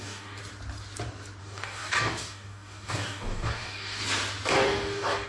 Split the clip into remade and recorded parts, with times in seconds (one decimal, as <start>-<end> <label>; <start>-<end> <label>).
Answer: 0.0-0.4 remade; 0.4-1.4 recorded; 1.4-4.0 remade; 4.0-4.5 recorded; 4.5-5.3 remade